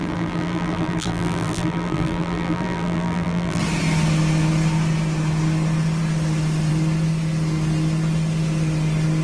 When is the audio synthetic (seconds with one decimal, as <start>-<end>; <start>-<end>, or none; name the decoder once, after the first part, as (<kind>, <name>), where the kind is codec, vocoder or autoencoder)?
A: 0.0-3.6 (vocoder, BigVGAN v2)